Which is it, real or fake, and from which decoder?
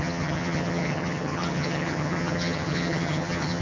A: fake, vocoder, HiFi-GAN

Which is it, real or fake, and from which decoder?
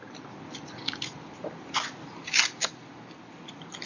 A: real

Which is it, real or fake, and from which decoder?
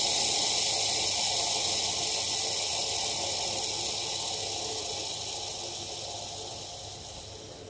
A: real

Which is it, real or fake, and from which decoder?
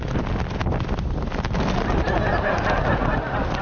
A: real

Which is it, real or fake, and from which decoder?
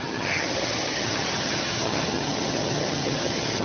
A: fake, vocoder, HiFi-GAN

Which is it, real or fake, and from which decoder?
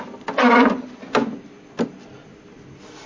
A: real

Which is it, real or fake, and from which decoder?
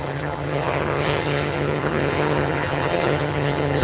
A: fake, vocoder, HiFi-GAN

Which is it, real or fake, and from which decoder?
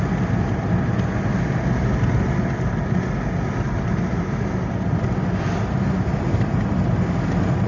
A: real